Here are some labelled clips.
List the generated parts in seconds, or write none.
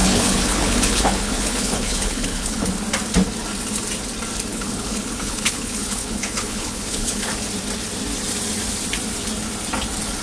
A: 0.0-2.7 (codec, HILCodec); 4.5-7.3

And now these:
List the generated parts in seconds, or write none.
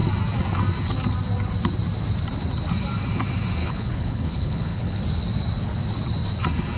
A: 3.6-5.0 (codec, HILCodec)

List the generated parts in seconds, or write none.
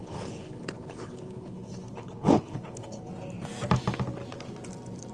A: 0.0-3.1 (codec, HILCodec)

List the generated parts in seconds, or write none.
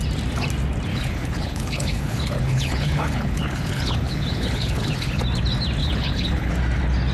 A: 0.9-5.2 (codec, HILCodec); 5.8-6.5